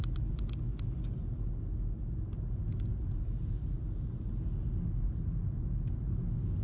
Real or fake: real